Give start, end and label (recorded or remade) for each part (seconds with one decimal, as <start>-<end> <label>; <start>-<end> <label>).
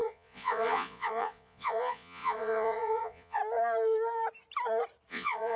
0.0-3.4 remade; 3.4-5.1 recorded; 5.1-5.6 remade